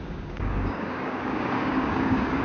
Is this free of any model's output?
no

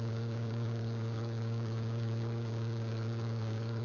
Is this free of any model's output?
no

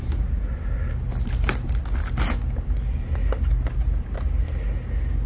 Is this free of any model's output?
yes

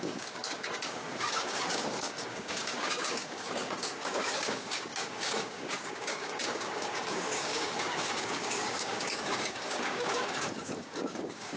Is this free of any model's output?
no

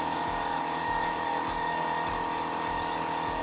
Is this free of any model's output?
no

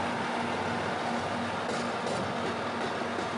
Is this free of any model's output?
yes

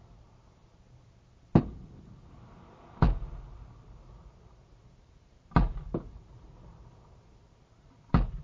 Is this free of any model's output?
yes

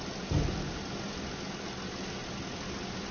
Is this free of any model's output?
yes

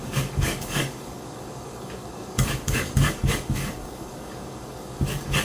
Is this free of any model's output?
no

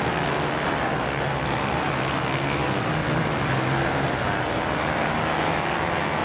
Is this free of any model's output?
yes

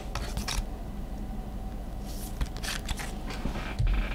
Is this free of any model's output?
yes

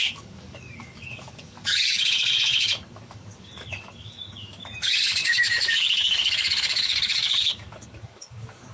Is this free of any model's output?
no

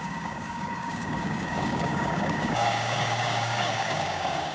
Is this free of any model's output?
no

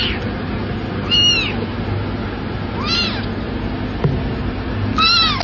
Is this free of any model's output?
yes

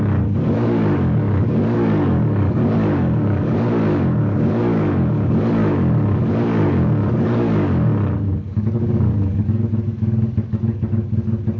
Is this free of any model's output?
no